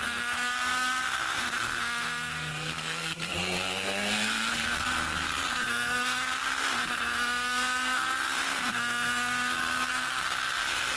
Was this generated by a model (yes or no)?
yes